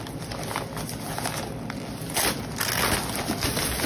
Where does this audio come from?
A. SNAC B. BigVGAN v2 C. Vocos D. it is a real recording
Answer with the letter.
D